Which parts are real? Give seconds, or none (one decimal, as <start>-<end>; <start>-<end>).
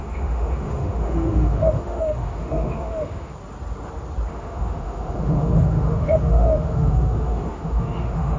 3.3-4.3